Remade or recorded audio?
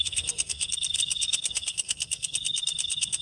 remade